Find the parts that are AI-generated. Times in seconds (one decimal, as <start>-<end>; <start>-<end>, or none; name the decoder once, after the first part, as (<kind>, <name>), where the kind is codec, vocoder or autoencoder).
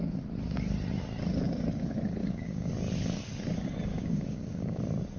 2.2-2.7 (codec, DAC); 3.9-4.8